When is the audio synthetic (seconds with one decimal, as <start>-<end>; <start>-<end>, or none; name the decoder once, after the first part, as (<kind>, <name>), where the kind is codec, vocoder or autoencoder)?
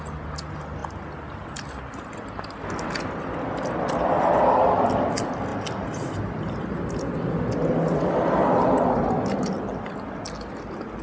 none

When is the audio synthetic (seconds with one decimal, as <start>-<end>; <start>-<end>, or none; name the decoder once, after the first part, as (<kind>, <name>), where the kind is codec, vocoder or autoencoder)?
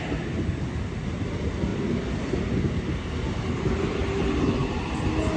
none